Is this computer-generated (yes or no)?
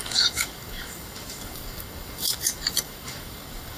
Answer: yes